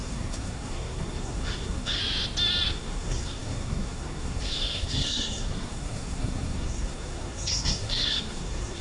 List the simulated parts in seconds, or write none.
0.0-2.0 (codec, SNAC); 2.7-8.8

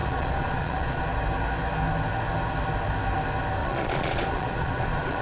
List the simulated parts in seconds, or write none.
0.0-1.0 (vocoder, Vocos); 3.6-5.2

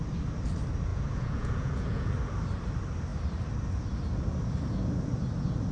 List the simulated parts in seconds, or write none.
0.9-2.1 (vocoder, Vocos)